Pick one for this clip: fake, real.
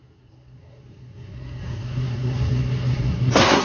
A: fake